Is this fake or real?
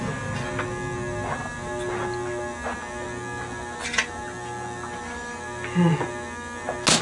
real